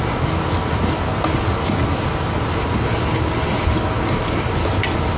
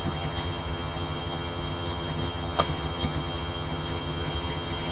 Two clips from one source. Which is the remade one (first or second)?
second